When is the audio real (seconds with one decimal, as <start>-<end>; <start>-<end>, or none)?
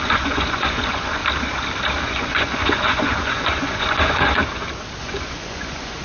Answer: 1.2-2.0; 4.4-5.0